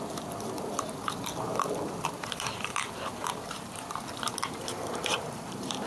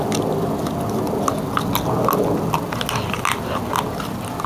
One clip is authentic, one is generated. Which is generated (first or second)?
first